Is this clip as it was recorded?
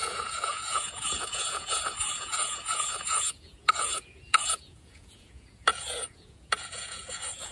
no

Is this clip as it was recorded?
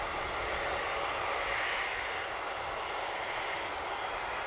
yes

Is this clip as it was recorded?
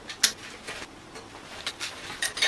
yes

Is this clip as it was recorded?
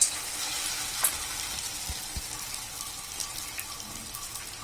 yes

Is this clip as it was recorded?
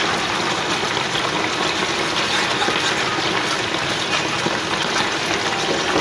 yes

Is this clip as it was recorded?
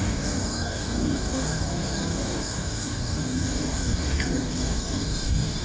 no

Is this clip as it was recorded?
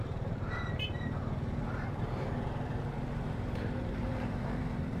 no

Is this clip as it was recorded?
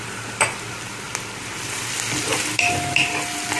no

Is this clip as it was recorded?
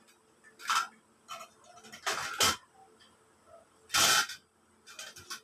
yes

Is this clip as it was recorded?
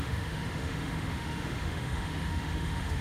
no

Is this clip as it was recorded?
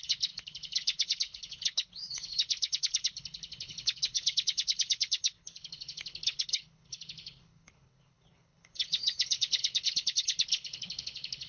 no